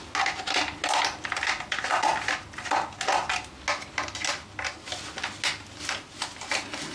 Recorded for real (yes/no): yes